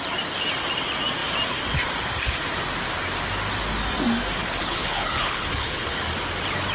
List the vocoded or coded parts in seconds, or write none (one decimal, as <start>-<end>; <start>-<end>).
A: 4.4-5.9